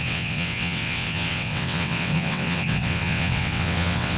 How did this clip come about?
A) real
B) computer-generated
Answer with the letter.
B